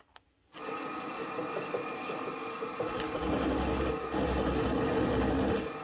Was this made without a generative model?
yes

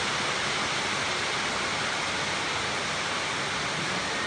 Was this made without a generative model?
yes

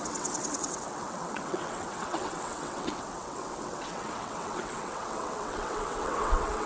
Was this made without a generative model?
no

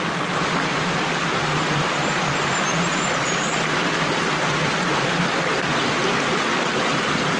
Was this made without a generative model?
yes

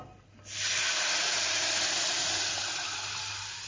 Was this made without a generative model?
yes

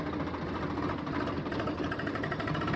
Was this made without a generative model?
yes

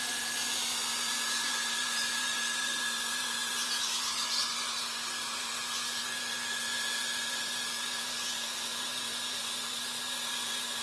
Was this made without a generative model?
no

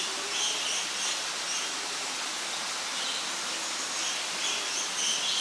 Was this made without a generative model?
yes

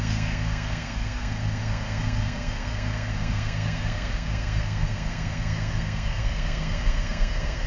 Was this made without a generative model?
no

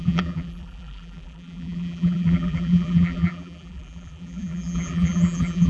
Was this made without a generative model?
no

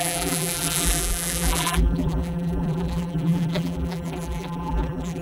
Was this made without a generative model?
no